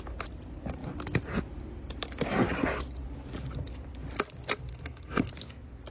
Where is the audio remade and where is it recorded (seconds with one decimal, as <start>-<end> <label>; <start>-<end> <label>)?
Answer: 0.0-4.7 recorded; 4.7-5.3 remade; 5.3-5.9 recorded